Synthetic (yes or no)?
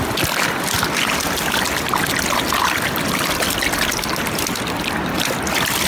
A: no